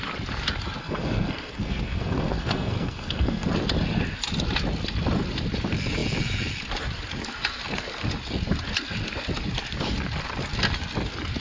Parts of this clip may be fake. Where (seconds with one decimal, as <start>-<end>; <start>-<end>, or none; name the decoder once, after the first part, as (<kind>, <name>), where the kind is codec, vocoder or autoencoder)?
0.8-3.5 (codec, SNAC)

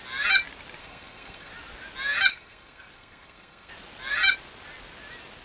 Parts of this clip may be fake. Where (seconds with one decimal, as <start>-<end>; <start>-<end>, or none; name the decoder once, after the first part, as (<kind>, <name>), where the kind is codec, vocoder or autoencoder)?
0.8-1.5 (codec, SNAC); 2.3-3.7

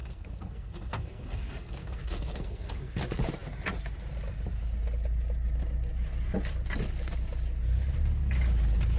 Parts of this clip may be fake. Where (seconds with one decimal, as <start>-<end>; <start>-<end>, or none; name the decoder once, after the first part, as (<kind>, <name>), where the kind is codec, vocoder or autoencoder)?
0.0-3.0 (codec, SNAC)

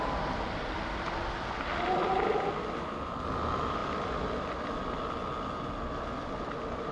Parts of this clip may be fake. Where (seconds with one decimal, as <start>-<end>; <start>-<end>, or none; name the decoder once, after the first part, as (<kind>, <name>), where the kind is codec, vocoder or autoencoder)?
none

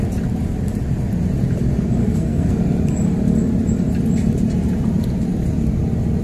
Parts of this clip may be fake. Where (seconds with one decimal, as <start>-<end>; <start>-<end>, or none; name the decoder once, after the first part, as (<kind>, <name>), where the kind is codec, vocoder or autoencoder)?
2.0-2.6 (codec, SNAC)